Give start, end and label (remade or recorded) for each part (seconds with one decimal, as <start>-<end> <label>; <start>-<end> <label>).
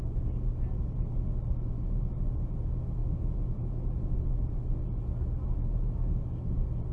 0.0-6.9 recorded